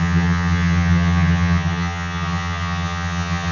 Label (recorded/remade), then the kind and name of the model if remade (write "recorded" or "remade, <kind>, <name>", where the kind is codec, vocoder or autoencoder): remade, vocoder, HiFi-GAN